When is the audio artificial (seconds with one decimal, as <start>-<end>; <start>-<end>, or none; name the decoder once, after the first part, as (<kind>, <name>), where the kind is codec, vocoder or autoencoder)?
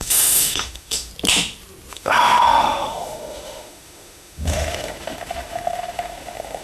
0.0-1.1 (autoencoder, DAC-VAE); 1.9-6.6